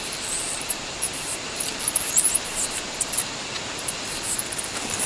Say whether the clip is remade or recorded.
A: remade